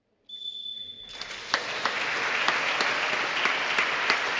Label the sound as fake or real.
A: real